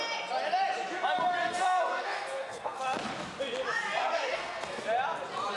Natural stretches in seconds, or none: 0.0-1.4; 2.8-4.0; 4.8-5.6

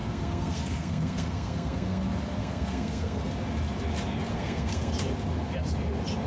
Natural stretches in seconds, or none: 2.0-2.4; 3.3-4.3; 4.9-6.3

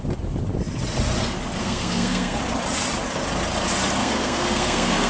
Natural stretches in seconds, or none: 0.0-1.6; 2.4-4.0

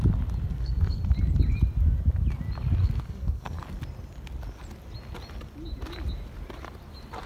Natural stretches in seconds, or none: 0.0-0.5; 1.0-2.8; 3.6-7.3

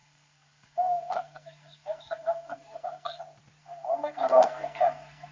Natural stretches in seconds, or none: 3.2-3.6

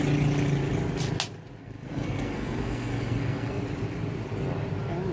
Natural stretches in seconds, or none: 0.0-1.6; 3.6-5.1